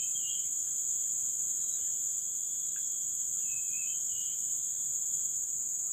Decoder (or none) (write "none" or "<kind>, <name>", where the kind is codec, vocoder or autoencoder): none